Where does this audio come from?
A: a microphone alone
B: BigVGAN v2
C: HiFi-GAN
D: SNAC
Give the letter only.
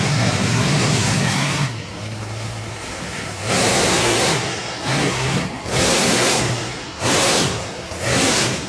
D